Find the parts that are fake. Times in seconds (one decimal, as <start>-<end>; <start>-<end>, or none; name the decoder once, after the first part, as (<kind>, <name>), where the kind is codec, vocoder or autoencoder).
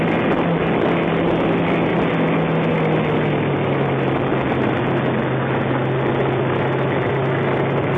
none